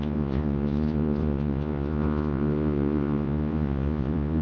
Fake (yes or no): yes